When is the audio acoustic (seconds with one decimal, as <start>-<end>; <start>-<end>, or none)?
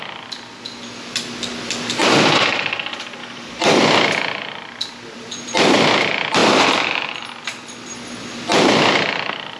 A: 0.0-3.2; 3.8-9.6